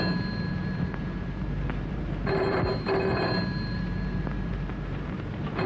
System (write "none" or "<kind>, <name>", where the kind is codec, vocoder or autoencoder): vocoder, BigVGAN v2